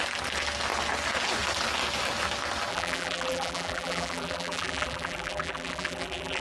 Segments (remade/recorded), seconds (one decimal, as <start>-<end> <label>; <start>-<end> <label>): 0.0-2.7 recorded; 2.7-6.4 remade